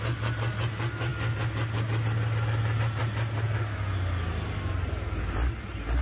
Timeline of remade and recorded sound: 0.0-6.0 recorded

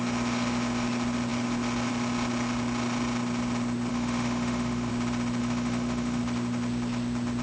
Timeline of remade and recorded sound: 0.0-3.9 recorded; 3.9-4.9 remade; 4.9-5.4 recorded; 5.4-6.2 remade; 6.2-7.4 recorded

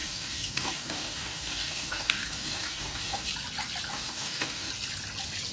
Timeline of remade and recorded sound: 0.0-3.3 remade; 3.3-3.9 recorded; 3.9-4.7 remade; 4.7-5.5 recorded

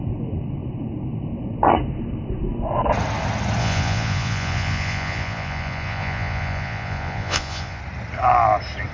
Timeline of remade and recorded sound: 0.0-3.6 recorded; 3.6-7.8 remade; 7.8-8.9 recorded

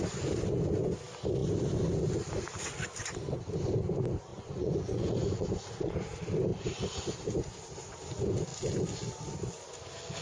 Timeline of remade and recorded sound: 0.0-4.3 recorded; 4.3-5.5 remade; 5.5-10.2 recorded

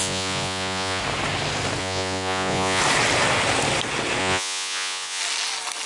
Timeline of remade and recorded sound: 0.0-1.0 remade; 1.0-1.8 recorded; 1.8-2.8 remade; 2.8-4.2 recorded; 4.2-5.2 remade; 5.2-5.9 recorded